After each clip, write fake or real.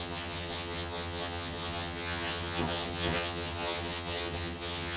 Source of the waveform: fake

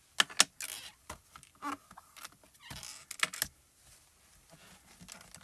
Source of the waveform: real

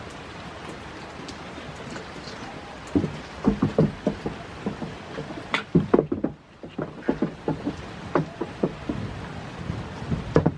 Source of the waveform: real